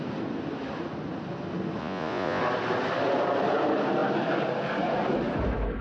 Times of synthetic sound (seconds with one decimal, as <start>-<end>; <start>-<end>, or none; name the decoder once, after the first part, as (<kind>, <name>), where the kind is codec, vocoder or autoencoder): 1.8-2.4 (vocoder, Vocos)